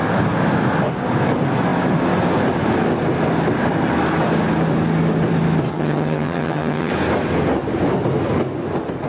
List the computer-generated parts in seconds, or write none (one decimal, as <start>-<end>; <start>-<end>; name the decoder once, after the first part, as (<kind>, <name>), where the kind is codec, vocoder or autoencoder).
5.7-6.9 (vocoder, HiFi-GAN)